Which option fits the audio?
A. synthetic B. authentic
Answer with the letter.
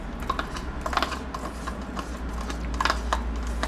B